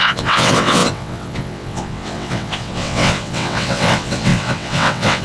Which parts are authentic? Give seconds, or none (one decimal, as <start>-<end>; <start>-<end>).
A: none